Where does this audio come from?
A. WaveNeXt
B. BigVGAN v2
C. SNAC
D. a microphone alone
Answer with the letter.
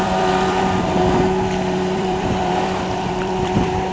B